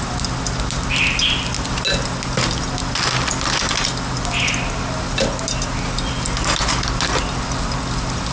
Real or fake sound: real